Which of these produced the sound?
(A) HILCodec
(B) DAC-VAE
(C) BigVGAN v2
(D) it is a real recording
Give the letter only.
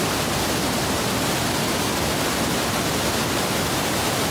D